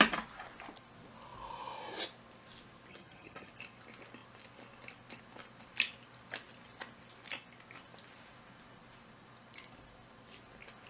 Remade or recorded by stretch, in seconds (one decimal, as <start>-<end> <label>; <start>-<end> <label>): 0.0-2.9 recorded; 2.9-3.5 remade; 3.5-10.9 recorded